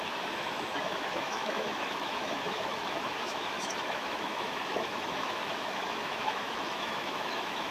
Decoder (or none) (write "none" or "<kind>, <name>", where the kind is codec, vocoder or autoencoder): autoencoder, DAC-VAE